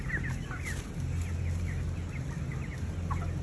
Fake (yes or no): no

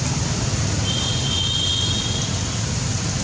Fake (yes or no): no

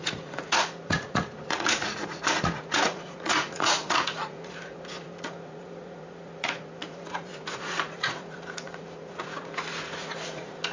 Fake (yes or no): yes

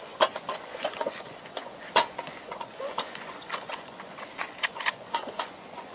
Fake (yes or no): yes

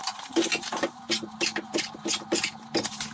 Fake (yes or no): yes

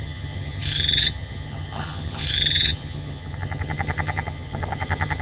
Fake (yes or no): yes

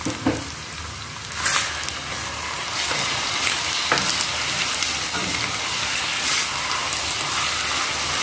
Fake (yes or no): no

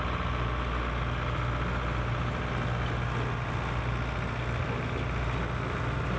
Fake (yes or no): no